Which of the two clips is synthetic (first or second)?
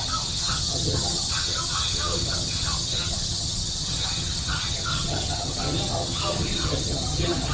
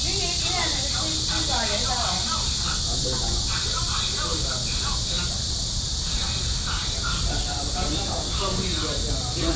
first